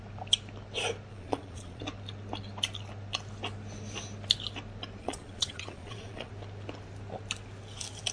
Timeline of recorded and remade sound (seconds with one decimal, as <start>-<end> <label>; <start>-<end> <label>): 0.0-1.1 recorded; 1.1-1.8 remade; 1.8-5.0 recorded; 5.0-6.3 remade; 6.3-8.1 recorded